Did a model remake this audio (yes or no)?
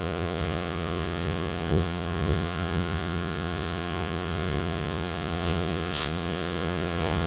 yes